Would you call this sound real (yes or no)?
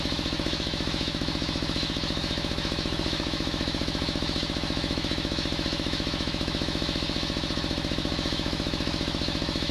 no